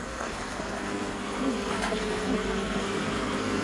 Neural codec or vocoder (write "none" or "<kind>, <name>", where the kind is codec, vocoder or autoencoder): codec, SNAC